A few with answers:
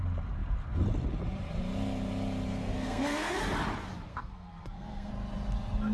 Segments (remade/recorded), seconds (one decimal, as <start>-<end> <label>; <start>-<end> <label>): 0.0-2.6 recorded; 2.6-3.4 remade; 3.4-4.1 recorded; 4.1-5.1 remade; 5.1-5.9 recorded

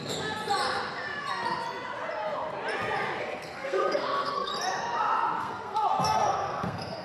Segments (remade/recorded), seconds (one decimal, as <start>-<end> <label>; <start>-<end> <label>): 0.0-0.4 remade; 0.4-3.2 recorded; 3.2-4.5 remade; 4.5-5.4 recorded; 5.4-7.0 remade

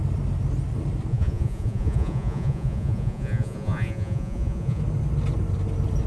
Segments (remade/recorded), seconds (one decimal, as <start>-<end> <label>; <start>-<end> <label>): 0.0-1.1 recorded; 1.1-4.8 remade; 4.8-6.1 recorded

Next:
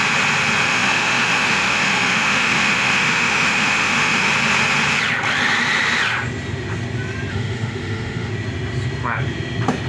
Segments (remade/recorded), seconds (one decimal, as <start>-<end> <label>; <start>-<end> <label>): 0.0-0.6 recorded; 0.6-4.3 remade; 4.3-7.3 recorded; 7.3-8.3 remade; 8.3-9.9 recorded